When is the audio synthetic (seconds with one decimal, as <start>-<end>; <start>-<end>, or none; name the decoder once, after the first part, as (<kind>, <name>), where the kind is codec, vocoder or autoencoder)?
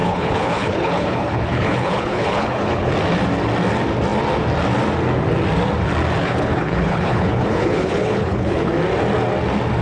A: 0.0-2.9 (codec, HILCodec); 6.2-8.7